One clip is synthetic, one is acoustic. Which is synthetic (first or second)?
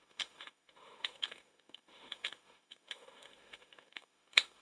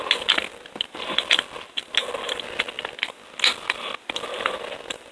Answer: first